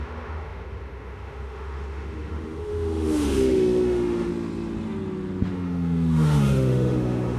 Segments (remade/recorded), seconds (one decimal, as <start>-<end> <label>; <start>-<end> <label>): 0.0-4.3 remade; 4.3-5.5 recorded; 5.5-7.4 remade